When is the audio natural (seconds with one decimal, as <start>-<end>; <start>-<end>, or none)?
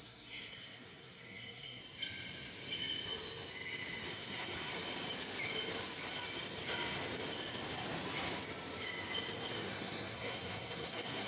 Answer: 1.8-4.1; 4.7-9.5